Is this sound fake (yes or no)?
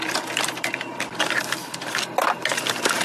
no